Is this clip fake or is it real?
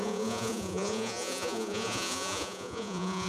fake